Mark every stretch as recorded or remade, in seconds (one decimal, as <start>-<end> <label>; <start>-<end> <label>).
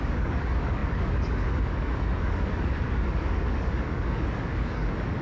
0.0-5.2 remade